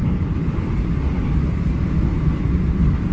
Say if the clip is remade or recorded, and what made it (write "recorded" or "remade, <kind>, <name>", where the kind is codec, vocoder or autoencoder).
recorded